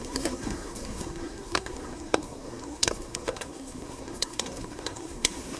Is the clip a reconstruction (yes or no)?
yes